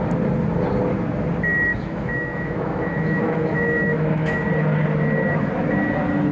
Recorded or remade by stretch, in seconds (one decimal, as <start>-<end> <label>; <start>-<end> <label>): 0.0-1.7 recorded; 1.7-4.5 remade; 4.5-6.3 recorded